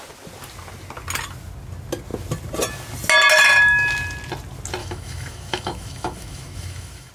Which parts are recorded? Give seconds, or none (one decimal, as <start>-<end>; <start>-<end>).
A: 0.0-4.8